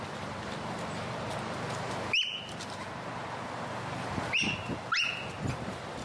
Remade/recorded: recorded